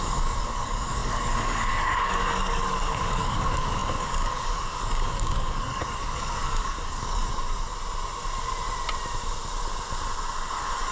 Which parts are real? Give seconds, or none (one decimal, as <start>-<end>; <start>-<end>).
7.7-10.5